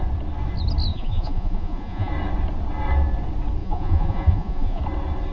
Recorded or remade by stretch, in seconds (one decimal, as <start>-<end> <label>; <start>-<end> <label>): 0.0-0.9 recorded; 0.9-2.1 remade; 2.1-3.6 recorded; 3.6-4.8 remade; 4.8-5.3 recorded